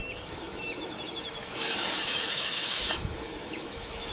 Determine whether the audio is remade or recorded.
remade